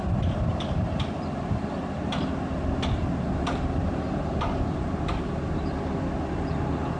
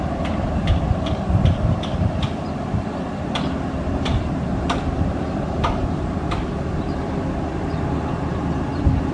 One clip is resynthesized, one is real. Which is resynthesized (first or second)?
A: second